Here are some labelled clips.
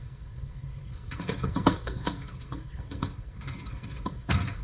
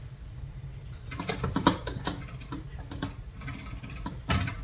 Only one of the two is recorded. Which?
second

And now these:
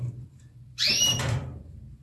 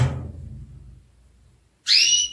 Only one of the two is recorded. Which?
second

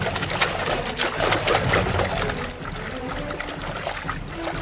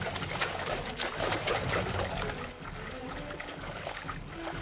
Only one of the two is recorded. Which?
first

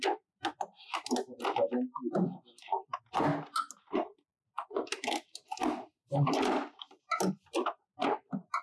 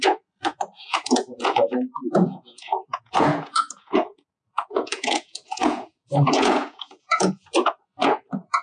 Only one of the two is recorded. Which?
first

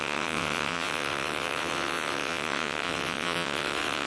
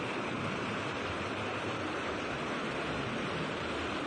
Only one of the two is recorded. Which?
second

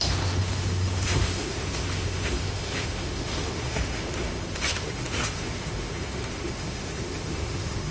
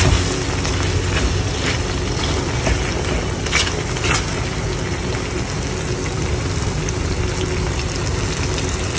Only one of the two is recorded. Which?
second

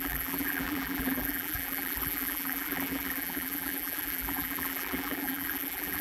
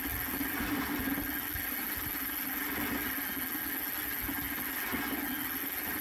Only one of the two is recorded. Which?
second